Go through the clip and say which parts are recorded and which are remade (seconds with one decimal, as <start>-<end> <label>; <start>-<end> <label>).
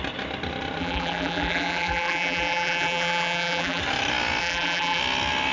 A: 0.0-0.8 recorded; 0.8-3.8 remade; 3.8-4.4 recorded; 4.4-5.0 remade; 5.0-5.5 recorded